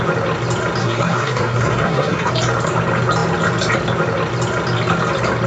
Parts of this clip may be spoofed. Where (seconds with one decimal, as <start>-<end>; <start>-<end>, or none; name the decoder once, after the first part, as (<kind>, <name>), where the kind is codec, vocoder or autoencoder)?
0.8-2.3 (codec, SNAC)